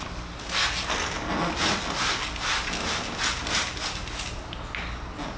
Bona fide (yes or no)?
yes